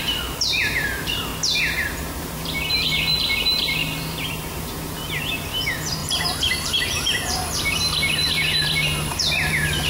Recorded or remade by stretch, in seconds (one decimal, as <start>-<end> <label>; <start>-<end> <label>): 0.0-1.3 remade; 1.3-1.9 recorded; 1.9-9.9 remade